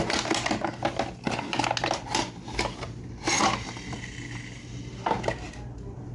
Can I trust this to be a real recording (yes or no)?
yes